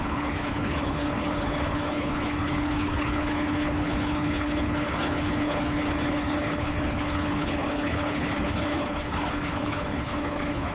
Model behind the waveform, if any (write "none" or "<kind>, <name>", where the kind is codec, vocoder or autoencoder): codec, HILCodec